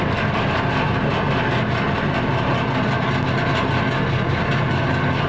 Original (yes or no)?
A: yes